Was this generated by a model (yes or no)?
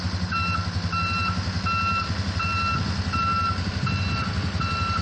no